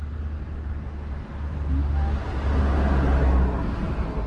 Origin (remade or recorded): recorded